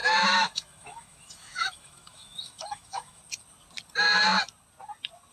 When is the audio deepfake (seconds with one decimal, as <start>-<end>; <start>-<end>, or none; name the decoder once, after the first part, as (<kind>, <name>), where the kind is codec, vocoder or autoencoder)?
0.0-3.2 (autoencoder, DAC-VAE)